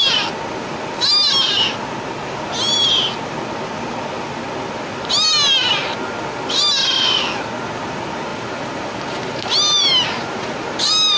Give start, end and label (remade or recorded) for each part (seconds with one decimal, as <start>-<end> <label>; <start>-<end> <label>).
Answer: 0.0-8.3 recorded; 8.3-11.2 remade